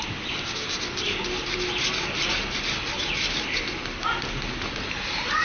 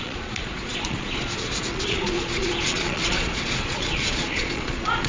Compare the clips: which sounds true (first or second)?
first